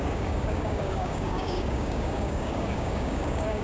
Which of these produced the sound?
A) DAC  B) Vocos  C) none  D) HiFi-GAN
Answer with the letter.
A